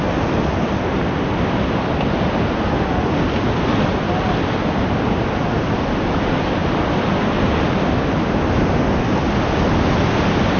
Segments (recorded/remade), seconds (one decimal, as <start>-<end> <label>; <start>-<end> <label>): 0.0-6.6 recorded; 6.6-7.2 remade; 7.2-10.6 recorded